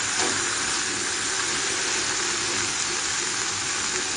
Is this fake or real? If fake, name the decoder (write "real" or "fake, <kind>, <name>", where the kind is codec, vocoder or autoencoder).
real